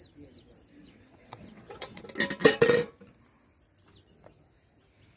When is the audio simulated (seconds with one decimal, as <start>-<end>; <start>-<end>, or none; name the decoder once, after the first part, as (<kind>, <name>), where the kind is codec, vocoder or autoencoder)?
0.8-2.0 (vocoder, WaveNeXt); 2.4-2.9